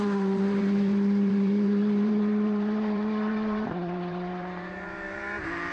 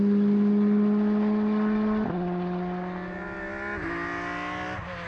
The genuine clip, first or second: second